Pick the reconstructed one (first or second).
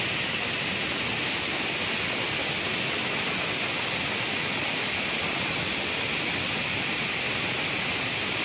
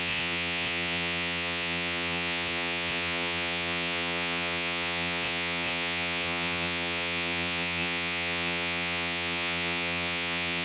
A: second